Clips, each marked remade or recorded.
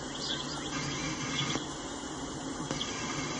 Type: recorded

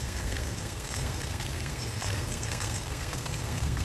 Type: remade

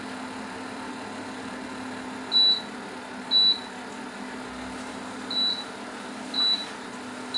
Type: recorded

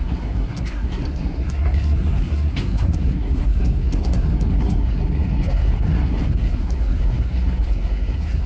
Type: remade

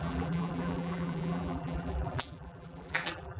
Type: remade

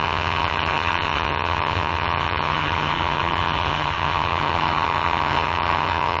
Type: remade